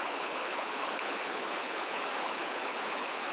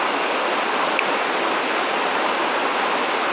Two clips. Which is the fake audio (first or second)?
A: first